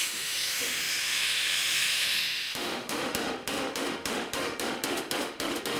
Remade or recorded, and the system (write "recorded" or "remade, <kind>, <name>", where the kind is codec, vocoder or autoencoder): remade, autoencoder, DAC-VAE